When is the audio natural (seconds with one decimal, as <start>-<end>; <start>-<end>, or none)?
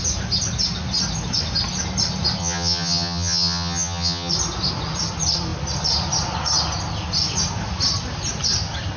0.0-2.4; 4.3-9.0